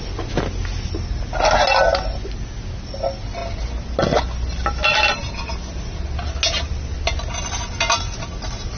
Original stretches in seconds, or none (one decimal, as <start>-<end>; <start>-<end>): 0.0-8.8